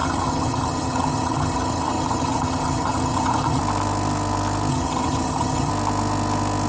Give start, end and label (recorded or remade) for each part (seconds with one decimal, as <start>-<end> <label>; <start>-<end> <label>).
0.0-3.6 remade; 3.6-4.7 recorded; 4.7-5.7 remade; 5.7-6.7 recorded